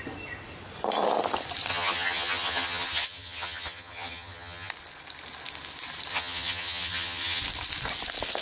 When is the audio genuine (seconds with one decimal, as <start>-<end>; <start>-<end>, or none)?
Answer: 0.0-1.7; 4.7-6.1; 7.4-8.4